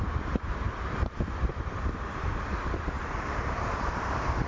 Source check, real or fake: fake